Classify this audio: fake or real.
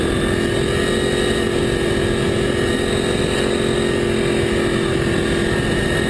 real